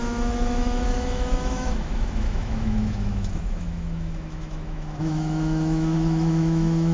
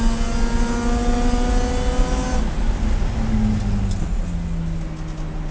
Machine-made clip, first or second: first